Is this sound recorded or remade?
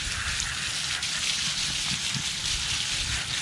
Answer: recorded